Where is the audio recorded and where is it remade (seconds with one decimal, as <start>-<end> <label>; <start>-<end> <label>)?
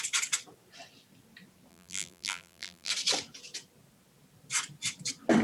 0.0-1.7 recorded; 1.7-2.9 remade; 2.9-5.4 recorded